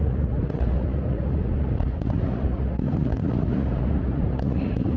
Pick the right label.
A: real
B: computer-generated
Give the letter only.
B